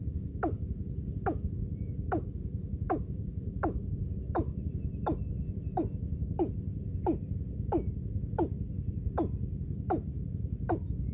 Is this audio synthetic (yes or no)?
no